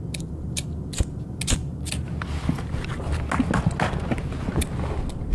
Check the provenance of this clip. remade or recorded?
recorded